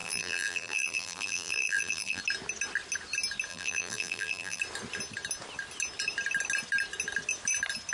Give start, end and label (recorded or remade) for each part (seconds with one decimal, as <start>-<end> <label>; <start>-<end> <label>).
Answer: 0.0-2.2 remade; 2.2-3.5 recorded; 3.5-4.6 remade; 4.6-7.9 recorded